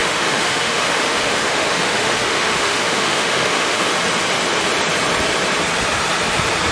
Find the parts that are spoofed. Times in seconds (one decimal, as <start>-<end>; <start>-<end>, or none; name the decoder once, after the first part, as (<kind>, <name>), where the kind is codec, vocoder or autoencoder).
0.0-3.9 (autoencoder, DAC-VAE)